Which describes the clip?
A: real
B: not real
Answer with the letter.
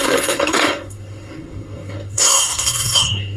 B